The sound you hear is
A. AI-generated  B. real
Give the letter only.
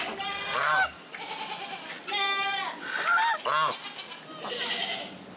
B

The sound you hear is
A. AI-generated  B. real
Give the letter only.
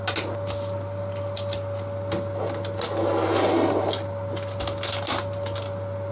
B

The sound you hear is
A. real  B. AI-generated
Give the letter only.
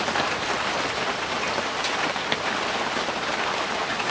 A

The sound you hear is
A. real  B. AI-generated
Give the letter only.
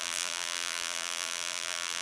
B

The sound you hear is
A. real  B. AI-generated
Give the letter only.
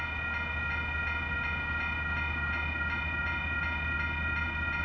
A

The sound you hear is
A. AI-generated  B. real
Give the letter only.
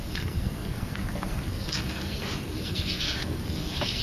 A